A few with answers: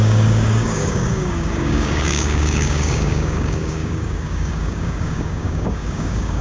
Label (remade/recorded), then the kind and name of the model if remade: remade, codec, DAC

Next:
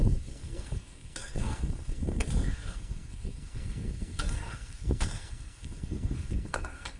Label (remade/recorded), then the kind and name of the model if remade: remade, codec, SNAC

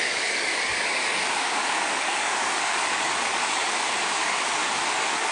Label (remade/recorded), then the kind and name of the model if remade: remade, codec, DAC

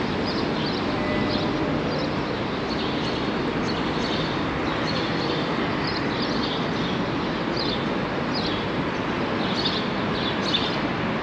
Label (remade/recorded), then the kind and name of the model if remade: recorded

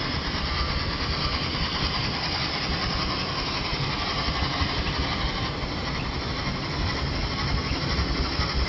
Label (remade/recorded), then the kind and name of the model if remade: recorded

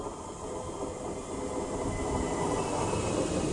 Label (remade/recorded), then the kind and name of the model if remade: recorded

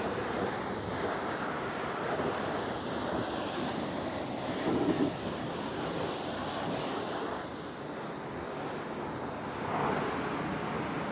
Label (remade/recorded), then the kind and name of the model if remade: recorded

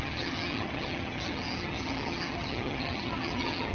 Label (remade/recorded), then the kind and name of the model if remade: remade, vocoder, HiFi-GAN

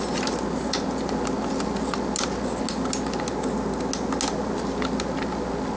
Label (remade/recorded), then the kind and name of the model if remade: recorded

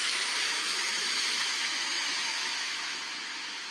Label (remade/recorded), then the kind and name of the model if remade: remade, autoencoder, DAC-VAE